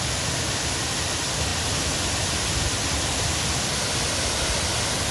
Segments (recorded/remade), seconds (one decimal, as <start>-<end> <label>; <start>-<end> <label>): 0.0-5.1 recorded